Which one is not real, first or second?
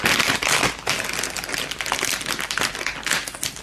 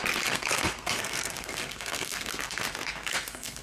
second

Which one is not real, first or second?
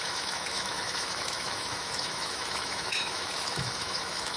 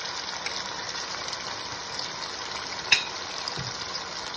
first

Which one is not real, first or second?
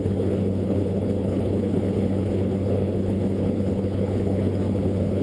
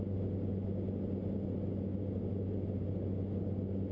first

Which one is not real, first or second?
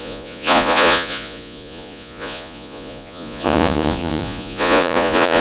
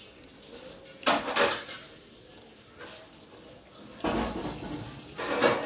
first